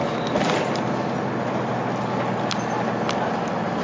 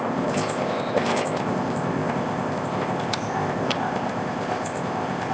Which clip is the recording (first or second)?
first